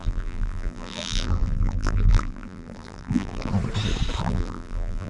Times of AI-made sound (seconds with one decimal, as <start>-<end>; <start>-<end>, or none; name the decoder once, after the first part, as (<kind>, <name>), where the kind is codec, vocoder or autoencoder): 0.0-3.5 (vocoder, BigVGAN v2); 4.2-5.1